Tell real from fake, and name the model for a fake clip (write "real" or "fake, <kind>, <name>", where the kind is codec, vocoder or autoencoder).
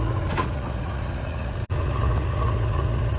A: fake, vocoder, Vocos